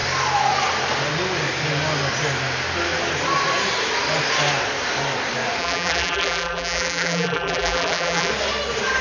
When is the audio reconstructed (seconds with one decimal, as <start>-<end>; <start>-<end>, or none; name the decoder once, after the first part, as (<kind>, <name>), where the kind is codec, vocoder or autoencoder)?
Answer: 5.6-8.3 (vocoder, BigVGAN v2)